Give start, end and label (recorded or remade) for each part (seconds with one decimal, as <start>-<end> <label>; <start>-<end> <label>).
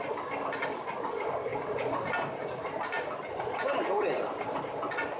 0.0-5.2 recorded